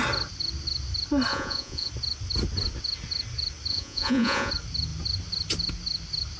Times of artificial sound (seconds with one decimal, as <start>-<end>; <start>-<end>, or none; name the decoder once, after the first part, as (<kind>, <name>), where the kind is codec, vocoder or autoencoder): 1.3-1.9 (vocoder, Vocos); 3.7-4.5

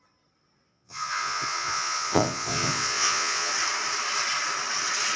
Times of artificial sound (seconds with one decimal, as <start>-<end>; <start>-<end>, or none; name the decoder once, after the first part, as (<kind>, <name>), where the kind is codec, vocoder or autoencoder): 0.7-3.5 (vocoder, Vocos)

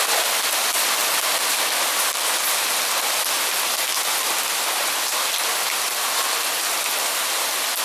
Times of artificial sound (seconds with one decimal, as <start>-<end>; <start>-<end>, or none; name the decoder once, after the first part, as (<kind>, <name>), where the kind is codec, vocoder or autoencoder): none